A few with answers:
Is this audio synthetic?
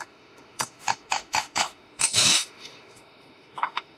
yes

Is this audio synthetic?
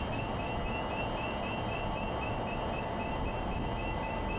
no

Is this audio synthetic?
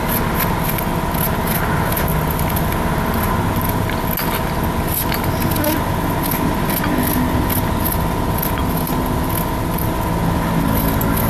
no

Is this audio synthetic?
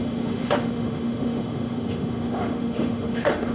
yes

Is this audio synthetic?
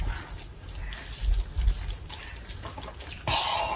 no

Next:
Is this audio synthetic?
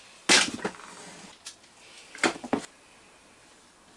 no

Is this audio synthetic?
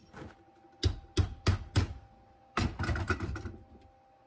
no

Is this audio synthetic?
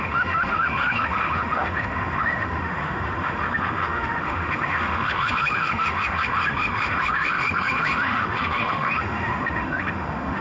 yes